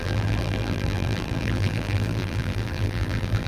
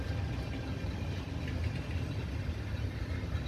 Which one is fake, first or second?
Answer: first